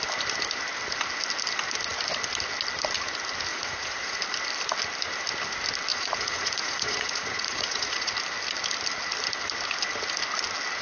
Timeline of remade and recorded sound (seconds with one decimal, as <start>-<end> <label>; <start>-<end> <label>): 0.0-3.5 recorded; 3.5-4.2 remade; 4.2-5.9 recorded; 5.9-8.1 remade; 8.1-10.8 recorded